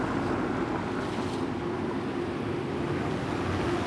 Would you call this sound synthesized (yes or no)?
no